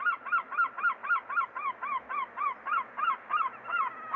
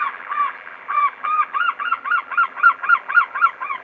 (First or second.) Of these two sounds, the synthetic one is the second